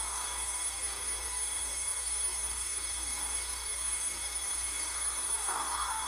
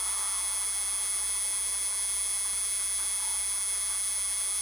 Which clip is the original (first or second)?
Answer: second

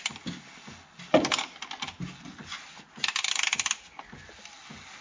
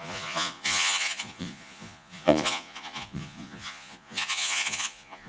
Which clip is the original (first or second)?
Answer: first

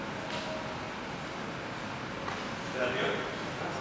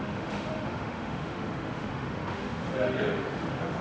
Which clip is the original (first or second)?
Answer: first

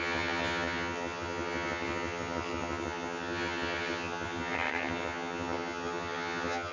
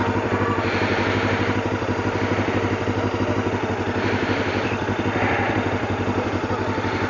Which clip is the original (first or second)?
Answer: second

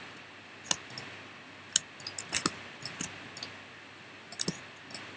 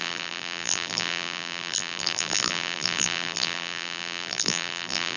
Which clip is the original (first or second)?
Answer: first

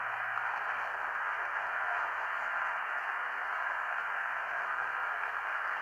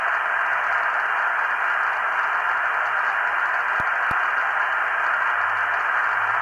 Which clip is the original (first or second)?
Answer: second